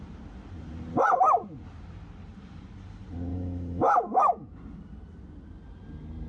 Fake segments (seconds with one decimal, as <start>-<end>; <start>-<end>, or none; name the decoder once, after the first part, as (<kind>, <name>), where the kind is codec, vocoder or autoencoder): 3.3-4.5 (autoencoder, DAC-VAE)